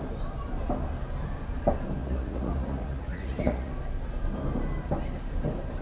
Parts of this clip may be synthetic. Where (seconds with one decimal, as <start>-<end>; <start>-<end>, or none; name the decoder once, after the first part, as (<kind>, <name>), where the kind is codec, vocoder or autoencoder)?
2.0-3.7 (vocoder, Vocos)